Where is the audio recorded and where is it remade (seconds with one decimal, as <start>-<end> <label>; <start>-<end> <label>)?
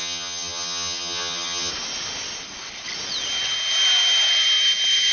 0.0-1.7 remade; 1.7-5.1 recorded